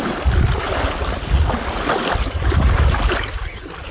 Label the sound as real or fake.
fake